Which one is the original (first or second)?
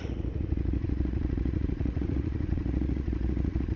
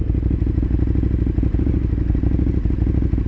second